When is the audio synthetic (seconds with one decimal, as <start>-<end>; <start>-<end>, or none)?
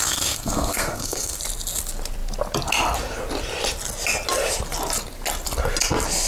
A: 0.0-1.4